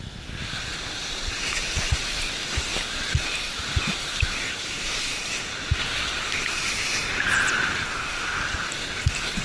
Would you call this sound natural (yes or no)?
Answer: yes